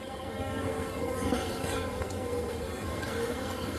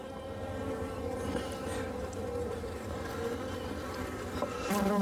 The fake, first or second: first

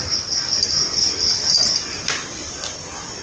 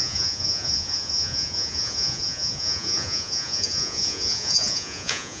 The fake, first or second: second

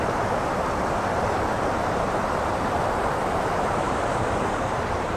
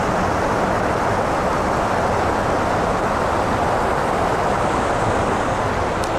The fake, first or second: first